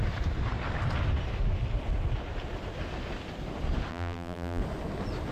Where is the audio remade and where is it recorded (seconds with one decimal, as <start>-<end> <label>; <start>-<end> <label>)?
0.0-3.9 recorded; 3.9-4.6 remade; 4.6-5.3 recorded